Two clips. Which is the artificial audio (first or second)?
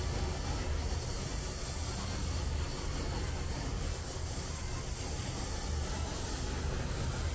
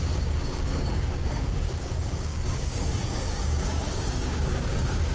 second